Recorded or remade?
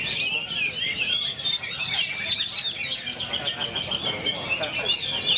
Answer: recorded